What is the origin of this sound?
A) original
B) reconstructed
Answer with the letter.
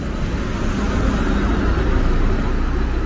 A